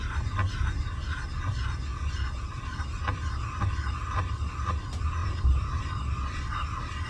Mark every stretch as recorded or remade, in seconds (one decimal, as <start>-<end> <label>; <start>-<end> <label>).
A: 0.0-7.1 recorded